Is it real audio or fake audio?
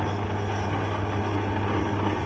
real